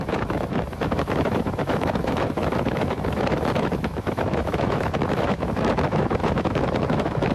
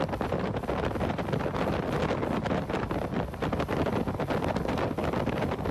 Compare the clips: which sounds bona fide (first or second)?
second